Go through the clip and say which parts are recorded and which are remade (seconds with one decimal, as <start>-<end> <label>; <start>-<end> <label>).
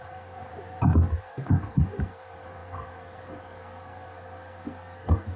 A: 0.0-0.5 remade; 0.5-1.2 recorded; 1.2-5.4 remade